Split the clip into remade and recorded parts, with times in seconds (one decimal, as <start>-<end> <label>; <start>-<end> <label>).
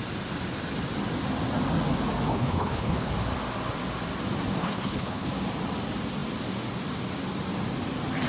0.0-2.3 recorded; 2.3-3.1 remade; 3.1-4.6 recorded; 4.6-5.3 remade; 5.3-8.3 recorded